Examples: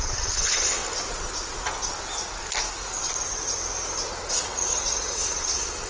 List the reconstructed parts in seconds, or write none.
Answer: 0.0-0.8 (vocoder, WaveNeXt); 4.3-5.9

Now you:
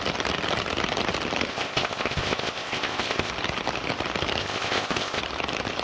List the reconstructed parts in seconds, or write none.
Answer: 1.5-3.3 (codec, ZipCodec); 4.4-5.2

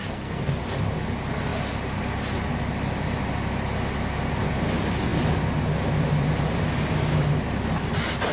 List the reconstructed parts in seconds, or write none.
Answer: 0.0-0.6 (codec, SNAC)

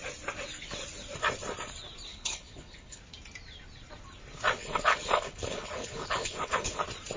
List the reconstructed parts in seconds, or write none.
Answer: 2.1-3.0 (codec, HILCodec); 4.6-6.8

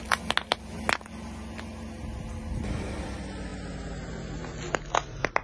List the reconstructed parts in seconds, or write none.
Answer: none

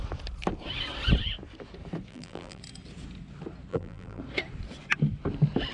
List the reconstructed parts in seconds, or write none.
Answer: 2.1-2.6 (vocoder, BigVGAN v2); 3.7-4.2

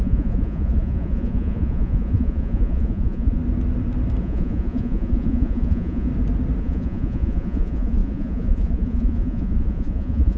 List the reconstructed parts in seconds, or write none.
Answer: 0.0-3.4 (vocoder, Vocos); 4.2-6.1; 6.6-10.4